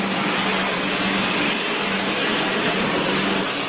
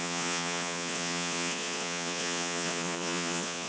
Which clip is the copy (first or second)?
second